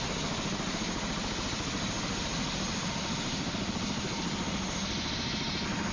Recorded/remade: recorded